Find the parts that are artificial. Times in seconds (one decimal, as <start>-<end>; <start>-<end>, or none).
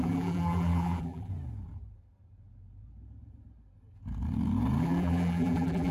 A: 0.0-1.3; 4.8-5.9